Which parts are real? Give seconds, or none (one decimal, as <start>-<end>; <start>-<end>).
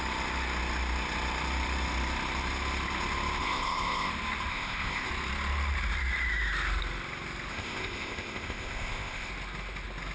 0.0-3.4; 4.1-4.5; 5.1-7.5; 9.3-10.1